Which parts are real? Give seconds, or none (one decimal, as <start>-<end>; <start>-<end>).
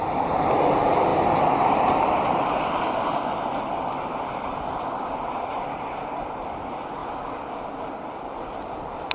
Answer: 0.0-9.1